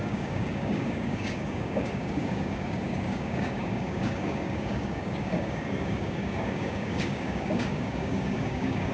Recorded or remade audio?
remade